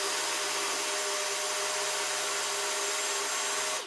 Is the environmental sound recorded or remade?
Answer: recorded